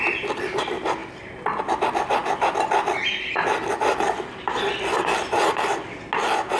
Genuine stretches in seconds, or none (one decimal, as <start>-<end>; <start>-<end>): 0.0-6.6